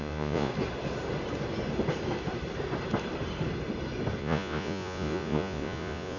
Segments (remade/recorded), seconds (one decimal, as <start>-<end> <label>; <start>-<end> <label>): 0.0-0.5 remade; 0.5-4.2 recorded; 4.2-6.2 remade